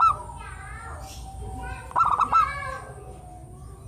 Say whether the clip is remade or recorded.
recorded